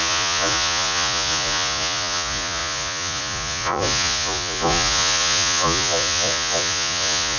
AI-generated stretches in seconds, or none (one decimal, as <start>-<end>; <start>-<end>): 0.0-7.4